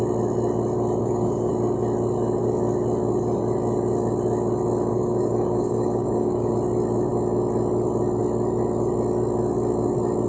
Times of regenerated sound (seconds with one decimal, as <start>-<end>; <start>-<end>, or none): 1.0-1.5; 4.9-6.5